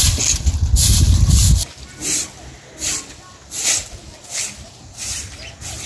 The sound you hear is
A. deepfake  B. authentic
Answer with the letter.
B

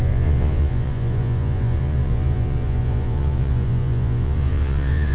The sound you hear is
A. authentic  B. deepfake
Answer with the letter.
B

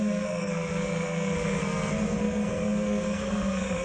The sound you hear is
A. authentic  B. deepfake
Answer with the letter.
B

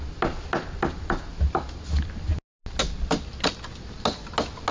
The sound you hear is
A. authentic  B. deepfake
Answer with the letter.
A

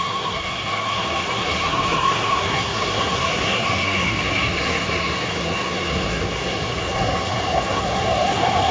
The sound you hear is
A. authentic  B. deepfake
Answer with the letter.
B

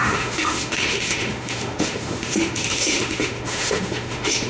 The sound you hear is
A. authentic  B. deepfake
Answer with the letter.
B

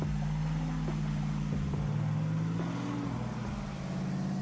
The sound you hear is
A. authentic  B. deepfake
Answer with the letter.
A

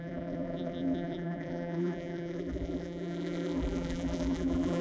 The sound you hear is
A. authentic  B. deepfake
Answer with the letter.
B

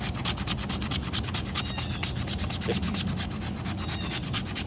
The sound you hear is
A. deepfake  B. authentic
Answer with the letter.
B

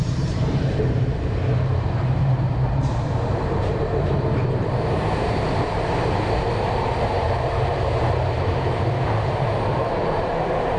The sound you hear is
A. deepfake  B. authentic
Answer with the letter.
A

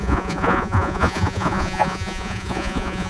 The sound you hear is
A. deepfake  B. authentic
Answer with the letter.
A